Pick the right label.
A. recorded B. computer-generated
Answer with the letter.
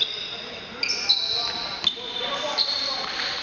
A